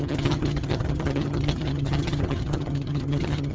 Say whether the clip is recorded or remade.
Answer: remade